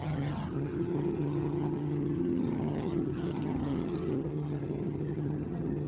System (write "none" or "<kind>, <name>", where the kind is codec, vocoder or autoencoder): vocoder, HiFi-GAN